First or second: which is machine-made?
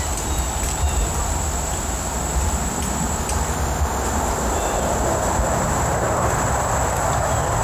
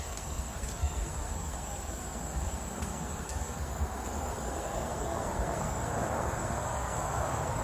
second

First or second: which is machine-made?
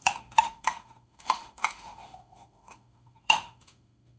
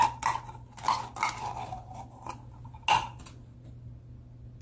first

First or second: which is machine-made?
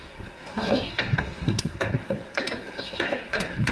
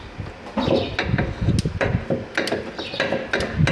first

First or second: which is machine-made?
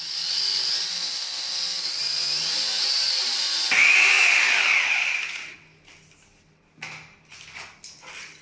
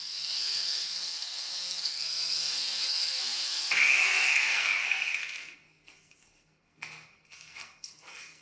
second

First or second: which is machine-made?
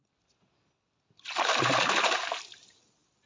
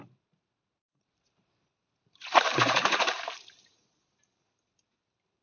second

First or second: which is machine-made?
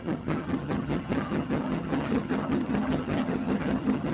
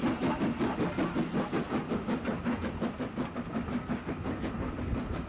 first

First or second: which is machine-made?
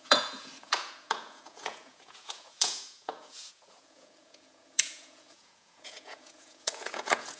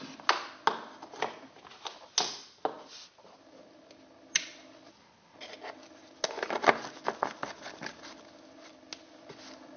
first